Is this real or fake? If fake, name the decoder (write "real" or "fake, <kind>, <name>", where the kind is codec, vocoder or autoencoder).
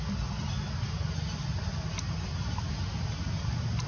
real